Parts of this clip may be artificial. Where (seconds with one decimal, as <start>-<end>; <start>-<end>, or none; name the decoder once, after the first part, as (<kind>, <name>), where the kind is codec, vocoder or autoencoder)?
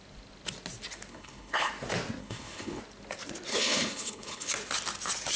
1.1-1.7 (codec, HILCodec); 2.2-2.8; 3.5-4.5